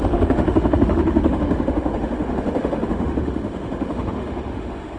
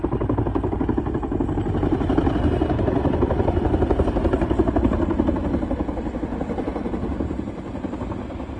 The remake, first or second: first